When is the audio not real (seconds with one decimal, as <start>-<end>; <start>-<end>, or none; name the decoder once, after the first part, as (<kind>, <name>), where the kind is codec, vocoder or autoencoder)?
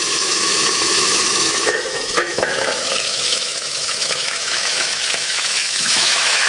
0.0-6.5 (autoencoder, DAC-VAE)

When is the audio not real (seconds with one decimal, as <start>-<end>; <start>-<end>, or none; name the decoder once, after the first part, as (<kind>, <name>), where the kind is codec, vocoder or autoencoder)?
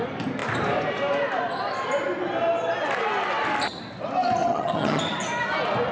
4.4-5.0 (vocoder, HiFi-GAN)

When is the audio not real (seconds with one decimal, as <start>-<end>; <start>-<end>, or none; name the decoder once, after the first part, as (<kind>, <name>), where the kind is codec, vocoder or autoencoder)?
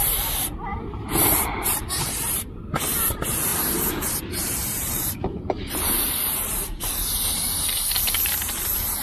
0.0-9.0 (vocoder, BigVGAN v2)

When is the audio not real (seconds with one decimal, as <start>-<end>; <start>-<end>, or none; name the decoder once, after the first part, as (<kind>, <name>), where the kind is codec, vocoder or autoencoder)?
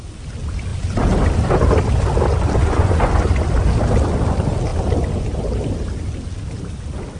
2.6-3.3 (vocoder, Vocos)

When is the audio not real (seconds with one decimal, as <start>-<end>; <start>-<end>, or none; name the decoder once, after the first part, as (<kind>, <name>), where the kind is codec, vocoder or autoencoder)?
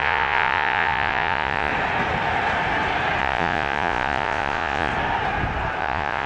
0.0-1.7 (vocoder, Vocos); 3.2-4.9; 5.8-6.3